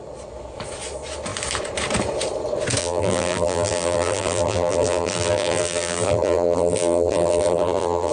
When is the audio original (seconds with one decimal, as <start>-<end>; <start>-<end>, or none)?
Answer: 0.0-2.8